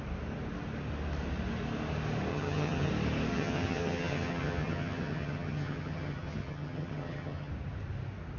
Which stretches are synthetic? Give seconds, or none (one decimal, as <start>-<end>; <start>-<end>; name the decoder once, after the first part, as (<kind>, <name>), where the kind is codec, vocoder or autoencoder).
2.3-2.9 (vocoder, HiFi-GAN); 3.3-7.5